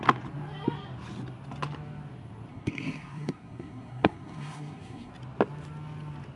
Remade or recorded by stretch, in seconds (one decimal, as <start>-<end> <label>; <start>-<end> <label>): 0.0-2.5 recorded; 2.5-5.1 remade; 5.1-6.4 recorded